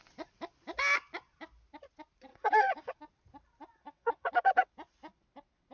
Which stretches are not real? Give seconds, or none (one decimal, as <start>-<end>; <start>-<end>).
2.3-3.0; 3.7-4.7